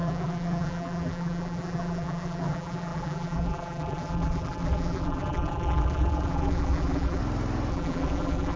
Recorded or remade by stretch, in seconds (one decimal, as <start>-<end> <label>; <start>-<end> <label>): 0.0-7.2 remade; 7.2-7.7 recorded; 7.7-8.6 remade